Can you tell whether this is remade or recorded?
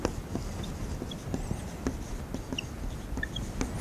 recorded